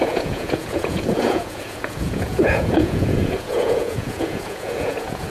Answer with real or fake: fake